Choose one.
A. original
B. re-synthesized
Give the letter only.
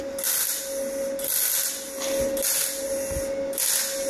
A